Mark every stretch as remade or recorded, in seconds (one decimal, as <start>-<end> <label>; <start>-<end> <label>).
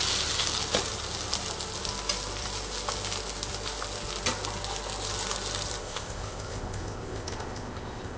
0.0-5.8 recorded; 5.8-8.2 remade